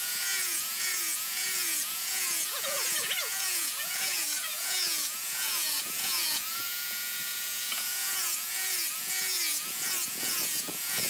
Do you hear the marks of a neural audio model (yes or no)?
yes